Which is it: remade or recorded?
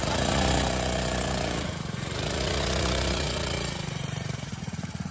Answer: remade